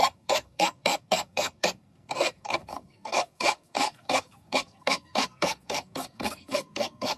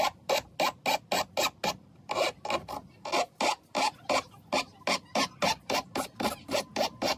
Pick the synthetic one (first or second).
first